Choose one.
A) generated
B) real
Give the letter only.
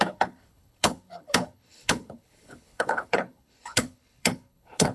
A